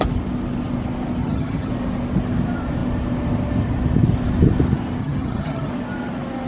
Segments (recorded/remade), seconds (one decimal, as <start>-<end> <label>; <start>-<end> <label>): 0.0-1.2 recorded; 1.2-1.7 remade; 1.7-5.0 recorded; 5.0-5.7 remade; 5.7-6.5 recorded